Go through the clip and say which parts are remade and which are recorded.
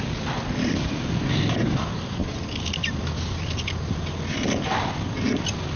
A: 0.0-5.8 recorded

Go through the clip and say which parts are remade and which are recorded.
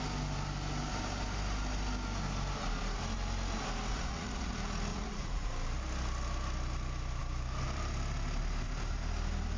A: 0.0-3.9 recorded; 3.9-4.5 remade; 4.5-4.9 recorded; 4.9-5.5 remade; 5.5-9.6 recorded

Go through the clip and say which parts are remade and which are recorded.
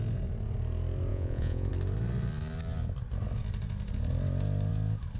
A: 0.0-1.1 recorded; 1.1-1.7 remade; 1.7-5.2 recorded